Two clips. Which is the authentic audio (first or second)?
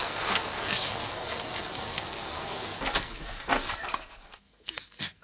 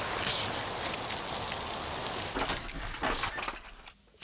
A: second